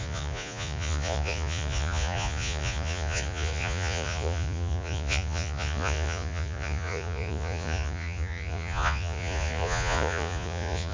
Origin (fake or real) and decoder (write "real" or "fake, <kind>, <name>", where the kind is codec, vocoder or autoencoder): fake, vocoder, Vocos